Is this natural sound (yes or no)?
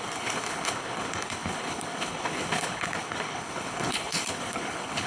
no